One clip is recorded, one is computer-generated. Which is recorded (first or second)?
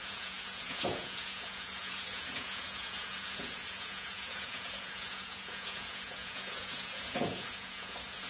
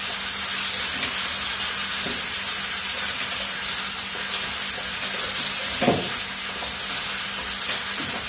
second